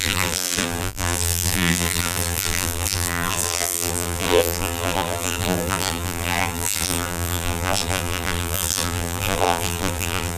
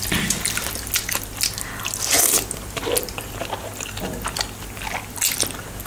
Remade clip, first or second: first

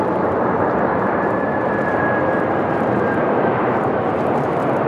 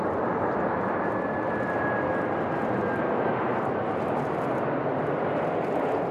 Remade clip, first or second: first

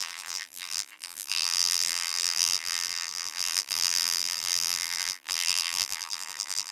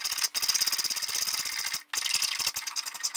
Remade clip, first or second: first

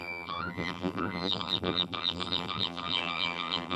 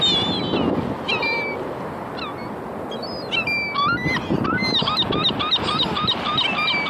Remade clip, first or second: first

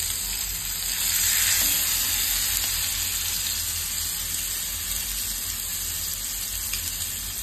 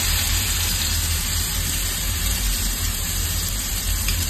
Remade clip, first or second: second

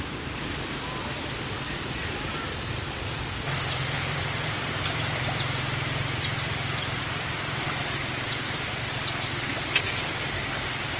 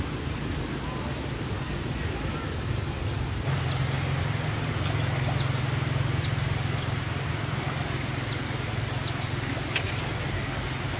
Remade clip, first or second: first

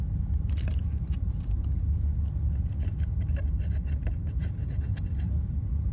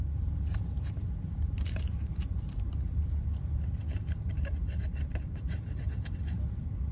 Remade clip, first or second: second